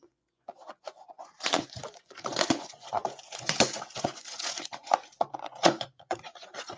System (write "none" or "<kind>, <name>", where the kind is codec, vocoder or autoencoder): vocoder, Vocos